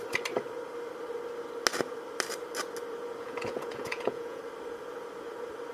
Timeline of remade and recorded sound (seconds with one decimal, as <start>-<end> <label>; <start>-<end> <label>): 0.0-3.2 recorded; 3.2-4.4 remade; 4.4-5.7 recorded